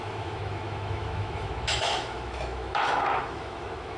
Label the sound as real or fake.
fake